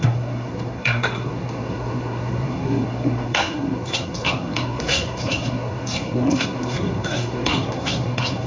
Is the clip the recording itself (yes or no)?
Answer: no